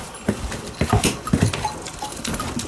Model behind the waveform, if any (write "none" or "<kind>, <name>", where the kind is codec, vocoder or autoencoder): none